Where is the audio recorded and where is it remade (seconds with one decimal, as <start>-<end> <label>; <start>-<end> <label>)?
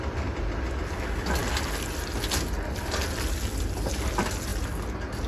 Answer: 0.0-5.3 recorded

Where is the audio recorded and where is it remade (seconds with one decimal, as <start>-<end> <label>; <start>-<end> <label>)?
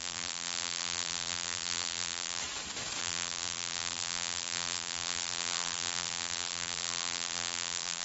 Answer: 0.0-2.4 remade; 2.4-3.0 recorded; 3.0-8.0 remade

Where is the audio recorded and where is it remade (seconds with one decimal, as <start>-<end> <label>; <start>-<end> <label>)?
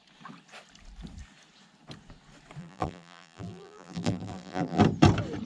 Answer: 0.0-2.6 recorded; 2.6-4.8 remade; 4.8-5.5 recorded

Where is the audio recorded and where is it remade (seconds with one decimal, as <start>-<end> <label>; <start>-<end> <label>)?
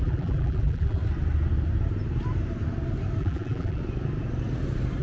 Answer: 0.0-1.0 remade; 1.0-3.2 recorded; 3.2-3.8 remade; 3.8-5.0 recorded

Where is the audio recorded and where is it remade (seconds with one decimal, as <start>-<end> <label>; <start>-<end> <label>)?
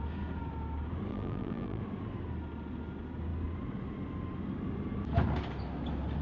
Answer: 0.0-1.1 recorded; 1.1-1.8 remade; 1.8-6.2 recorded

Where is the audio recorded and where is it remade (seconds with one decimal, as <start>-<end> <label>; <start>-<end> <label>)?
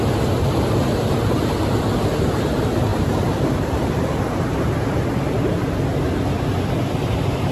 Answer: 0.0-2.9 recorded; 2.9-4.1 remade; 4.1-7.5 recorded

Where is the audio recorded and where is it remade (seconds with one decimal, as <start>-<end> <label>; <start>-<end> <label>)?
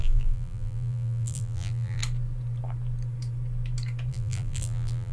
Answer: 0.0-2.0 remade; 2.0-4.1 recorded; 4.1-5.1 remade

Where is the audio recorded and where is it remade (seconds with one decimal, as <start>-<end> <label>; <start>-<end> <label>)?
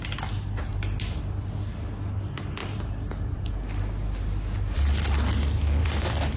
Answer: 0.0-2.6 recorded; 2.6-3.4 remade; 3.4-5.8 recorded; 5.8-6.4 remade